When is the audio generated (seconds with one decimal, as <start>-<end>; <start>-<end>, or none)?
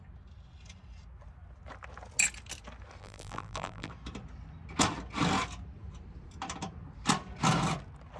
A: 3.0-3.9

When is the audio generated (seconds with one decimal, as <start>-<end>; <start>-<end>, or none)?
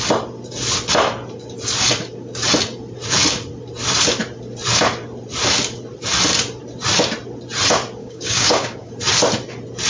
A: 8.0-8.9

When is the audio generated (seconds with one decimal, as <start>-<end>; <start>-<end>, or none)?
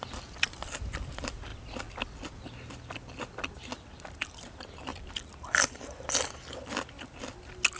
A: none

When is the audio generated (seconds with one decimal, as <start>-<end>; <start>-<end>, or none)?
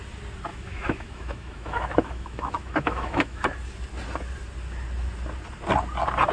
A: 0.5-3.4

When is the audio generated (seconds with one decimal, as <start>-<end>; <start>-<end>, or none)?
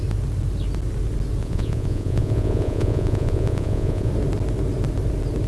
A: 1.4-4.1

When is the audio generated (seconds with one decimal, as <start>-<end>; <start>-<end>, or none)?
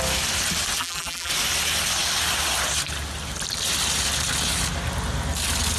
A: 0.8-1.3